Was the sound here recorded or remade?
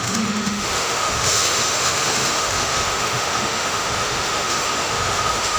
remade